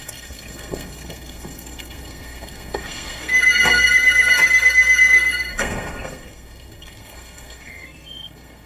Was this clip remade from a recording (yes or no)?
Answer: yes